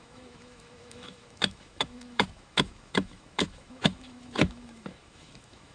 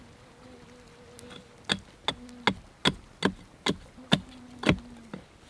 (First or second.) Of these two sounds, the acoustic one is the second